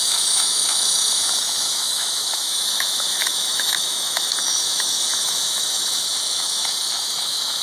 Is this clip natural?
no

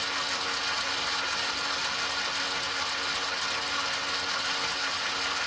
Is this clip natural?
yes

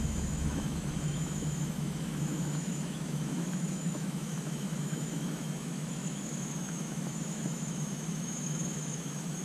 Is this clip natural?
no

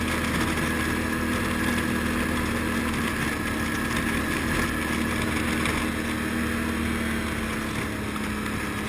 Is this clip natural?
yes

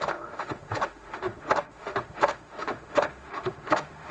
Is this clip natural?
no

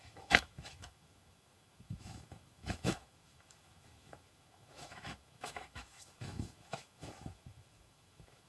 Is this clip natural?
no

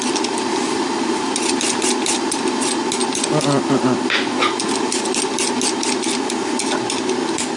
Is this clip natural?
yes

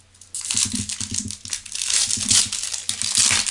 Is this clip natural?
yes